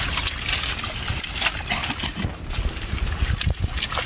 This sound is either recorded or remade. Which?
recorded